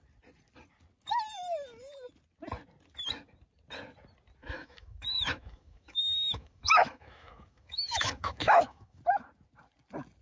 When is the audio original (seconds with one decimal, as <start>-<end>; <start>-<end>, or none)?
0.0-4.4; 9.0-10.2